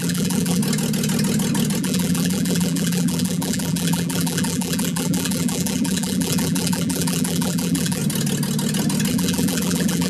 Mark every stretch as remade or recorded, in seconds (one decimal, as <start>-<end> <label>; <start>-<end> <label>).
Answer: 0.0-0.6 remade; 0.6-1.8 recorded; 1.8-8.0 remade; 8.0-9.1 recorded; 9.1-10.1 remade